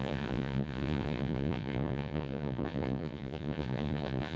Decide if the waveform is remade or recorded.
remade